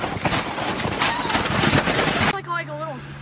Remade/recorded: recorded